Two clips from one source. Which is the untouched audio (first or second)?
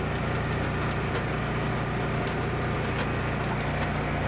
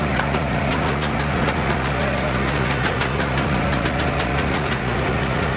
first